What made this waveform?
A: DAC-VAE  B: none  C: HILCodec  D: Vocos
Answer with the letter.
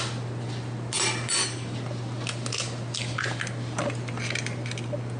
B